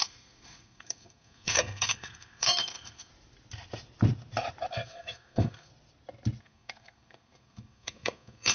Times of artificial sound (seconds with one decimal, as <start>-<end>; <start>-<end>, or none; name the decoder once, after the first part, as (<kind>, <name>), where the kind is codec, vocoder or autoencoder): 0.0-3.1 (codec, SNAC); 4.7-5.7; 6.4-8.5